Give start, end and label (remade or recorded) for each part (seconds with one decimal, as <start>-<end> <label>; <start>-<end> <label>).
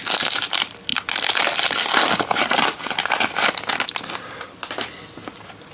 0.0-5.7 recorded